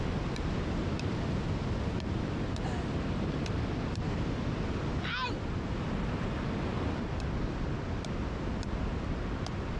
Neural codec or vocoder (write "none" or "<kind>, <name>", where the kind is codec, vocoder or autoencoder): none